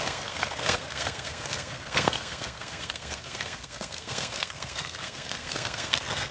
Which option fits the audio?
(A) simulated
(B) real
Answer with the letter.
A